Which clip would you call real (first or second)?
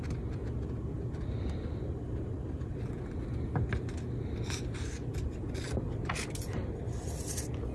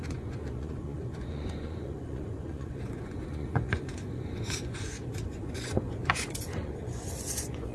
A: first